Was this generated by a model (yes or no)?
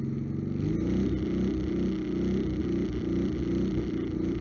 no